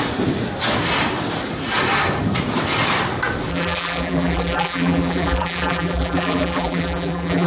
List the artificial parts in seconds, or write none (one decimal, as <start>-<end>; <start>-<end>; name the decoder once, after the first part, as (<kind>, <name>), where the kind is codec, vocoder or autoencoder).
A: 3.5-7.5 (vocoder, BigVGAN v2)